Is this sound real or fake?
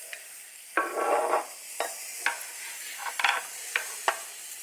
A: real